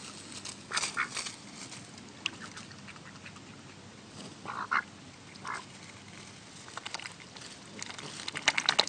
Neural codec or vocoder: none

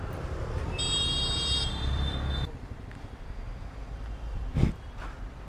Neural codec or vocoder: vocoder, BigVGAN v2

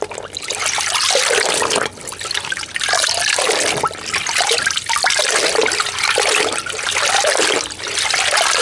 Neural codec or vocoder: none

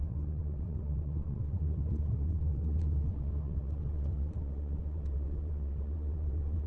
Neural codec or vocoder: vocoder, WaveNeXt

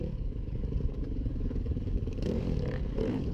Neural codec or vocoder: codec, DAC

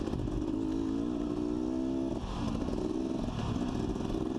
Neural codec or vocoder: none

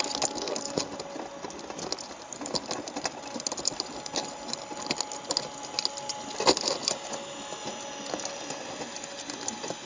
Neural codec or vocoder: none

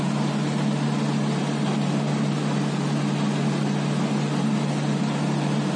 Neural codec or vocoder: none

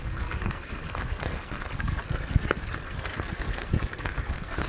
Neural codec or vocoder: codec, SNAC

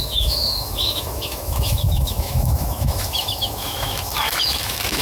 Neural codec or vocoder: autoencoder, DAC-VAE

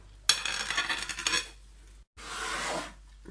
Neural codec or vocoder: none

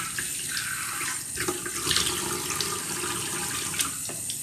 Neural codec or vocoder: none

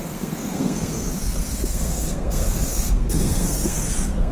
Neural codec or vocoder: codec, SNAC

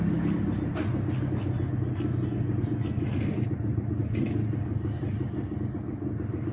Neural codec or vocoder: none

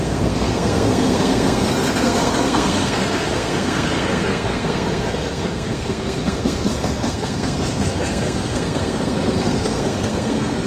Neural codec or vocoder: codec, SNAC